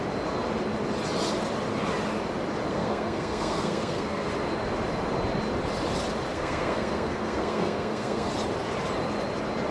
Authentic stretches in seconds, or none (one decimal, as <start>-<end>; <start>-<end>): 0.0-2.7; 4.3-6.3; 8.3-9.7